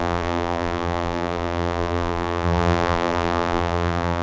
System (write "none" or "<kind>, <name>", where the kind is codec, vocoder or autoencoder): vocoder, BigVGAN v2